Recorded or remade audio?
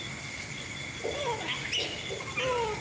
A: recorded